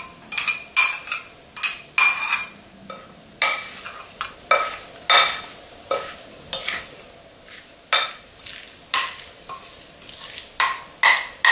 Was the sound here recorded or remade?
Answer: recorded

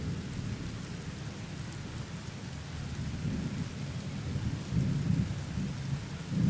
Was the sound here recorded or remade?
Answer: recorded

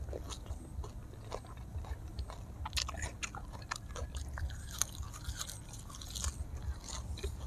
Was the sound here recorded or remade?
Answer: recorded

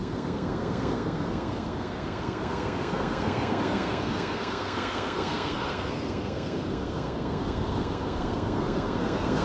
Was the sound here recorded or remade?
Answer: remade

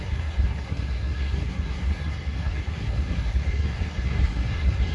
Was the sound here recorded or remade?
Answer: remade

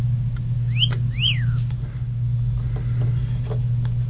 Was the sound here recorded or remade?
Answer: recorded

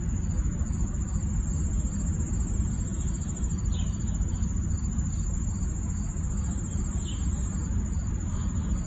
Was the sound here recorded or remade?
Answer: recorded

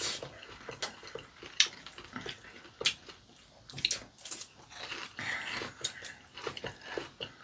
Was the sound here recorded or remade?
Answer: recorded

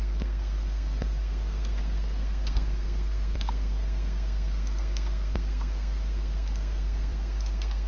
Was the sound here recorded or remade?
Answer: remade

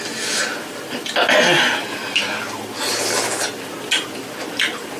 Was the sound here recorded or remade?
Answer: recorded